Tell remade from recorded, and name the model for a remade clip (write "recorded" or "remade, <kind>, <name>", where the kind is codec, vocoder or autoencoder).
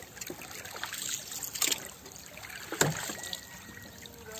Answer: recorded